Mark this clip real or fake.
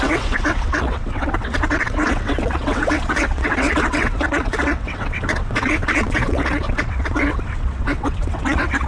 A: fake